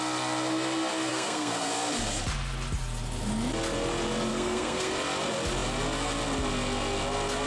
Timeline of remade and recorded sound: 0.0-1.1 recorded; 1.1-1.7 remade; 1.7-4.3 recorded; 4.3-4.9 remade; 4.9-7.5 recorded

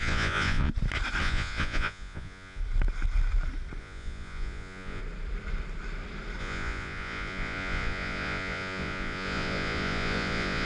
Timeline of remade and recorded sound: 0.0-0.7 remade; 0.7-1.2 recorded; 1.2-2.6 remade; 2.6-3.8 recorded; 3.8-5.0 remade; 5.0-6.4 recorded; 6.4-10.6 remade